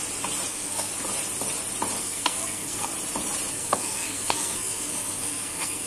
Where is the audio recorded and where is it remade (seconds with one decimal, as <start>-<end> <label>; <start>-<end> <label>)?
0.0-0.5 recorded; 0.5-0.9 remade; 0.9-2.0 recorded; 2.0-2.9 remade; 2.9-3.5 recorded; 3.5-5.9 remade